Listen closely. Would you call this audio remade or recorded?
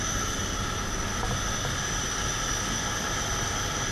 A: recorded